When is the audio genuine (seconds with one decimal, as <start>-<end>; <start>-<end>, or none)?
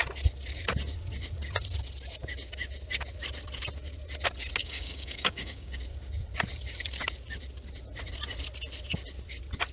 0.0-4.6; 5.8-9.7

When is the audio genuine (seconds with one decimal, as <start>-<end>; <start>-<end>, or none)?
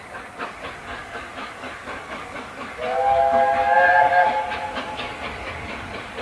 none